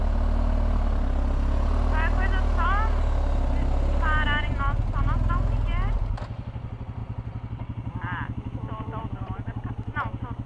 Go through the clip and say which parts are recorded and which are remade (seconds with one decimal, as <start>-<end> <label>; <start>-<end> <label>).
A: 0.0-10.5 recorded